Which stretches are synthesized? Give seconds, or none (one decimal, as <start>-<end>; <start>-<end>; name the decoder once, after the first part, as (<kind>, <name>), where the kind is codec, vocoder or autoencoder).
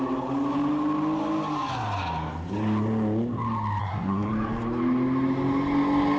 3.8-4.3 (codec, SNAC)